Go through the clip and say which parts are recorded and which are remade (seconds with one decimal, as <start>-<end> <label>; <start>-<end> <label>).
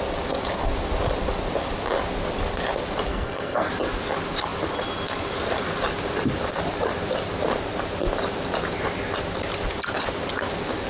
0.0-3.1 recorded; 3.1-3.7 remade; 3.7-10.9 recorded